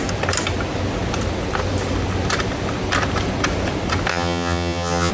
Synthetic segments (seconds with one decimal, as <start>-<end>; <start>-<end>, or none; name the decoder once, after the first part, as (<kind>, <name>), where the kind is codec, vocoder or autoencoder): 4.1-5.1 (vocoder, HiFi-GAN)